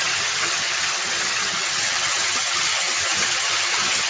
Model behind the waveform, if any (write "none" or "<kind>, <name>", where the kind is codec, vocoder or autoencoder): vocoder, HiFi-GAN